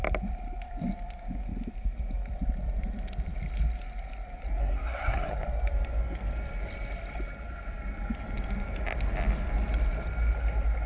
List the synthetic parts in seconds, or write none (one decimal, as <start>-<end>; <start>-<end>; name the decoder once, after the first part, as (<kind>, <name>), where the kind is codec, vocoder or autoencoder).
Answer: 4.6-5.3 (codec, SNAC)